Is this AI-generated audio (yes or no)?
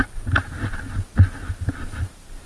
no